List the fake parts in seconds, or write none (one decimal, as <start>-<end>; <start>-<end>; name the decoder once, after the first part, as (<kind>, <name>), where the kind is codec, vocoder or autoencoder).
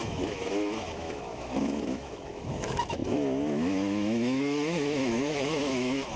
0.0-6.2 (autoencoder, DAC-VAE)